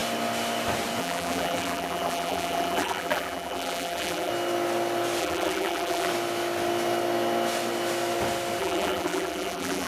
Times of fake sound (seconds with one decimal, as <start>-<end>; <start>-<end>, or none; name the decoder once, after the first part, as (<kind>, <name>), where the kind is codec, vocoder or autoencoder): 1.0-4.3 (vocoder, BigVGAN v2); 5.2-6.1; 8.6-9.9